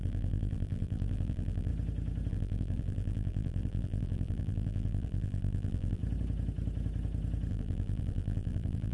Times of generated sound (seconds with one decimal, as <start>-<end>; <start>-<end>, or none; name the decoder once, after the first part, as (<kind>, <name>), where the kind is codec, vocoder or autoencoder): 0.0-1.7 (vocoder, BigVGAN v2); 2.3-6.0; 7.5-8.9